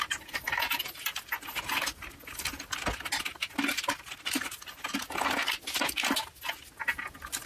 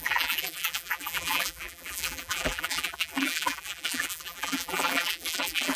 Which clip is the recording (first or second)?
first